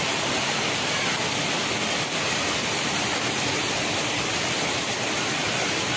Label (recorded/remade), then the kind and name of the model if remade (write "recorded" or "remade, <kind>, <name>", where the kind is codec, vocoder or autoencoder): recorded